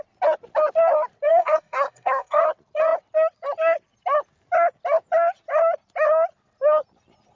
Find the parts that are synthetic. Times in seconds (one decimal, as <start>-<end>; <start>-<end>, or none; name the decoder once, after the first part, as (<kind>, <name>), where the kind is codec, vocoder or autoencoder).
1.3-2.4 (codec, SNAC)